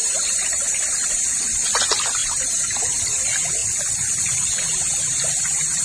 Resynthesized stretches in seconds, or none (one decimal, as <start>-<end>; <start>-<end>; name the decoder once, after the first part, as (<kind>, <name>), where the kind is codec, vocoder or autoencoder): 0.0-0.8 (vocoder, BigVGAN v2); 2.2-2.8